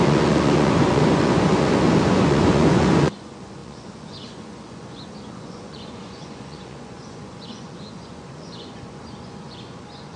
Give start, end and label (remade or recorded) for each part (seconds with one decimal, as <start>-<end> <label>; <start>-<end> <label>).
0.0-10.2 remade